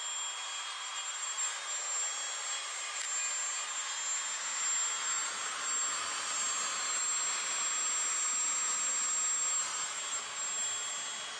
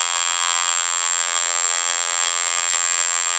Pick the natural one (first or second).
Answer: first